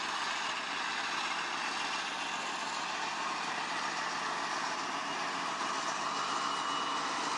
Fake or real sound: real